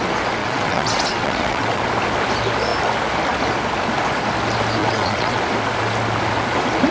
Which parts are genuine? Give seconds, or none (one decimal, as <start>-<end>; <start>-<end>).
0.0-0.4; 1.8-4.8; 5.4-6.9